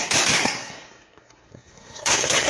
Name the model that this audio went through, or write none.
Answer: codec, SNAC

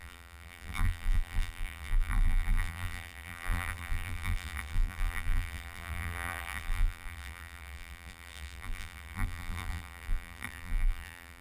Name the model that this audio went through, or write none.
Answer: vocoder, BigVGAN v2